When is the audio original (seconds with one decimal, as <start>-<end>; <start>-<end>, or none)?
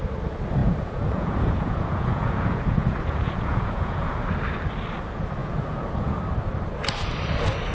0.0-0.6; 4.2-5.4; 6.2-7.7